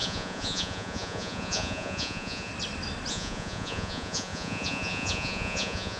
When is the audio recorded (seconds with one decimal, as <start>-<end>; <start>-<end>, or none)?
2.5-3.1